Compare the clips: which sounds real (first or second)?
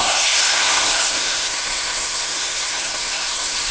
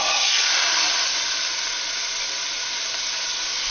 second